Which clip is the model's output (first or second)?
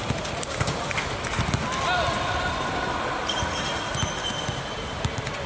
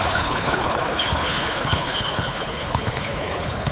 second